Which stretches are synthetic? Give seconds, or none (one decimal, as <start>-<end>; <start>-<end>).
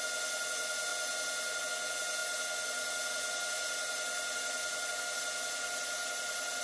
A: none